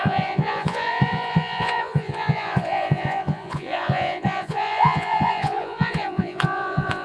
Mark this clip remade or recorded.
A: remade